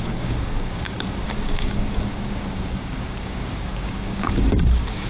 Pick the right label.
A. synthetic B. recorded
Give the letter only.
A